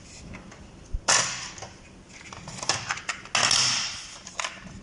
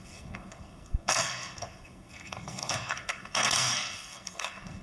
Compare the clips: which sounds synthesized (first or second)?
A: second